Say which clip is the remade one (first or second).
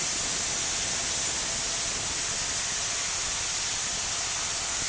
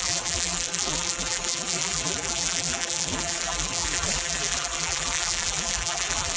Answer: second